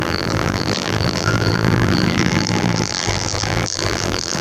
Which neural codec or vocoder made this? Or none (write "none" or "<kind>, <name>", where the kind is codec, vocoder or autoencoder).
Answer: vocoder, BigVGAN v2